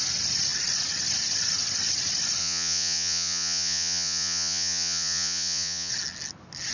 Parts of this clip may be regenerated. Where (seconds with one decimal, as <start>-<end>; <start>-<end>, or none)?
2.4-5.9